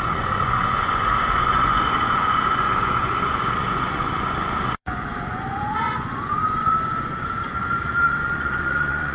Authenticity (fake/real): fake